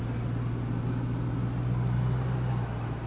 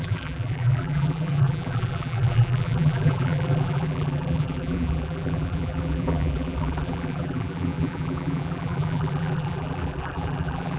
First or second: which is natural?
first